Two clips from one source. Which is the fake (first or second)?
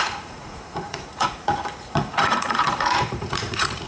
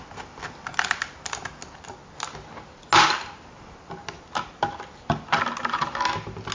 first